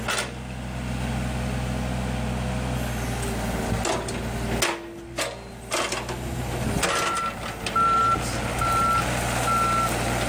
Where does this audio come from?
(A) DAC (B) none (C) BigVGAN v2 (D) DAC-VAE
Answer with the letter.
B